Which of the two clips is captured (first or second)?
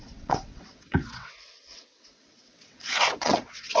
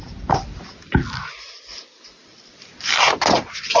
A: second